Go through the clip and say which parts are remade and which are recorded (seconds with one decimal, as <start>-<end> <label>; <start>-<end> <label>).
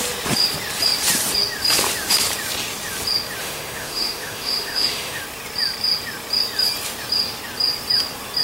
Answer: 0.0-3.4 recorded; 3.4-5.2 remade; 5.2-8.4 recorded